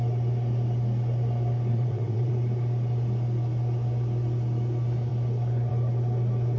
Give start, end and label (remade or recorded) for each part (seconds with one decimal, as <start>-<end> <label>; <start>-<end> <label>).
0.0-1.7 recorded; 1.7-2.3 remade; 2.3-6.6 recorded